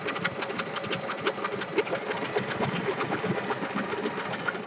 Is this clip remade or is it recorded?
recorded